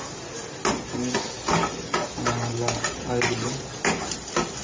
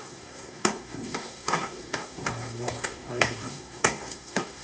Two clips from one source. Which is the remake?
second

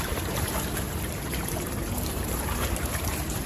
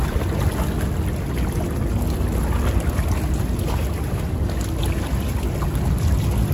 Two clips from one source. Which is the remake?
first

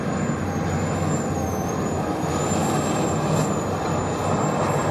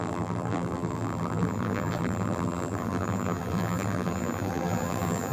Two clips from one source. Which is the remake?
second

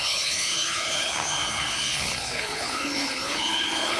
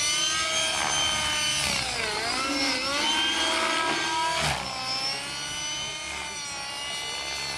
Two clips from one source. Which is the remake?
first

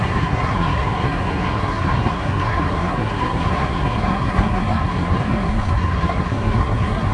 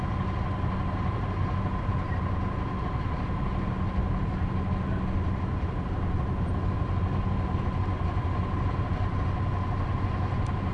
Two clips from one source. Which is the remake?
first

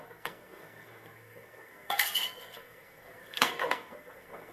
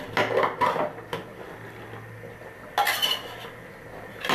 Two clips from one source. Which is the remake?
first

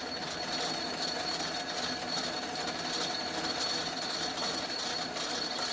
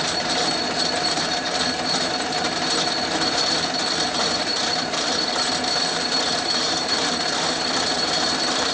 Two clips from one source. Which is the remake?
second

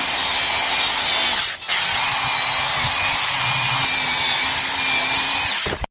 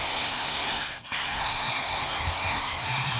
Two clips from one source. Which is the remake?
second